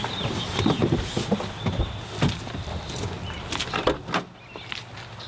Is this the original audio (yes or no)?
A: yes